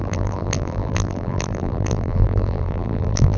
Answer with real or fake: fake